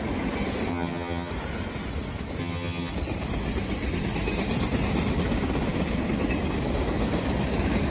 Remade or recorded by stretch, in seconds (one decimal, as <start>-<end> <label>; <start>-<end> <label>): 0.0-0.7 recorded; 0.7-1.3 remade; 1.3-2.4 recorded; 2.4-2.9 remade; 2.9-7.9 recorded